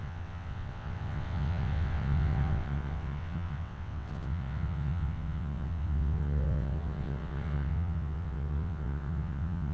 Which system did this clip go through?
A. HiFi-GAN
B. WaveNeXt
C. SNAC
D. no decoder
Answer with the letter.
B